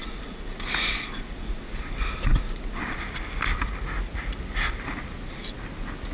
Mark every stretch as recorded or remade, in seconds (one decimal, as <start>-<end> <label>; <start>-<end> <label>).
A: 0.0-1.7 remade; 1.7-6.1 recorded